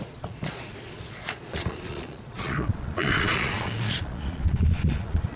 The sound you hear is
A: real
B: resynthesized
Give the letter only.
B